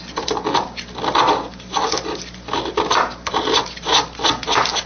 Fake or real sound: real